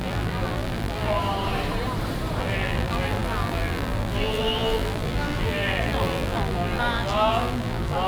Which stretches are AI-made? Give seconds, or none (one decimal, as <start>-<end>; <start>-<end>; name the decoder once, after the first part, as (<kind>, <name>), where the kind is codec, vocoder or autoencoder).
0.0-1.2 (vocoder, BigVGAN v2); 2.4-8.1